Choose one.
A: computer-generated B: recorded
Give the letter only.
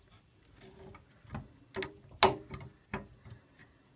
B